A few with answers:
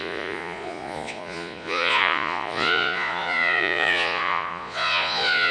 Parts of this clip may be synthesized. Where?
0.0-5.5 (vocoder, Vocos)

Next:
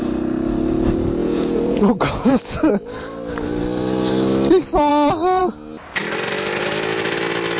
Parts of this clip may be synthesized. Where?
1.2-2.7 (vocoder, Vocos)

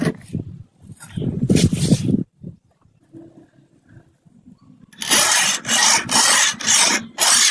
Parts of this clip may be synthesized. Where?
none

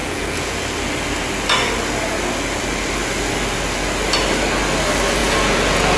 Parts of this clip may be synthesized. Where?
0.0-0.6 (vocoder, Vocos); 5.2-6.0